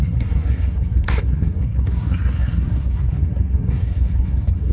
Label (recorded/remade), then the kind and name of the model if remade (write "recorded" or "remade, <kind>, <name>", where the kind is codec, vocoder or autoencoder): remade, codec, SNAC